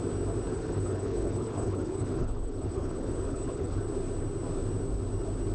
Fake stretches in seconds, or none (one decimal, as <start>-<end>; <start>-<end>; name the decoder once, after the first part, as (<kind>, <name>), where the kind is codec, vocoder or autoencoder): 0.5-3.8 (codec, HILCodec)